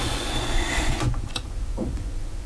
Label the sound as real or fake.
fake